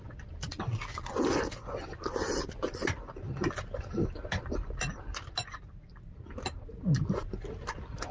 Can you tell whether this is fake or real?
real